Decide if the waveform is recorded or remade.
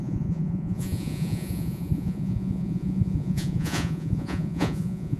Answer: remade